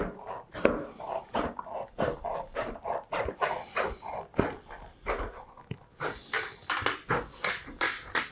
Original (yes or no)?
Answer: yes